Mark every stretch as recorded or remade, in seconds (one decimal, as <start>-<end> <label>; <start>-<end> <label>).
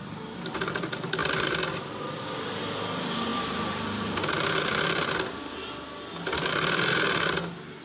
0.0-1.2 recorded; 1.2-2.6 remade; 2.6-3.3 recorded; 3.3-4.6 remade; 4.6-7.8 recorded